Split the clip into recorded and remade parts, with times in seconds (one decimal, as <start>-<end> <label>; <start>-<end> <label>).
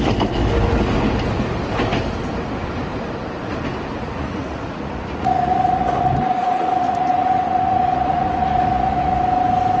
0.0-3.9 recorded; 3.9-9.2 remade; 9.2-9.8 recorded